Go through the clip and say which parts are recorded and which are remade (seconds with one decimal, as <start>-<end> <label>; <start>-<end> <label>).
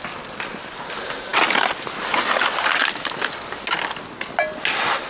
0.0-5.1 recorded